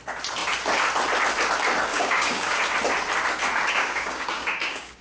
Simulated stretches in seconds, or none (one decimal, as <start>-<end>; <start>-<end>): 1.9-2.6; 3.8-5.0